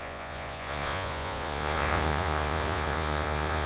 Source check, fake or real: fake